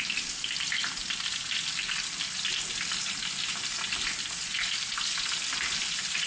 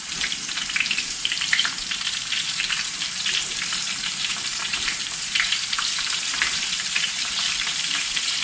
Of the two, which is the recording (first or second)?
first